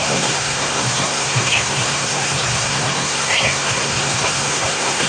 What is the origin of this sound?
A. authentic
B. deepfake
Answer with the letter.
B